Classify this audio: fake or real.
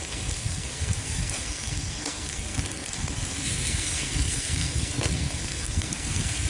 fake